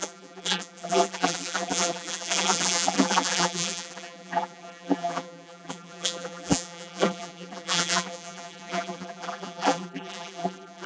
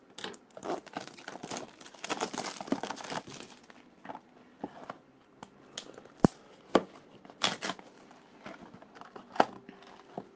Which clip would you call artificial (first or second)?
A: first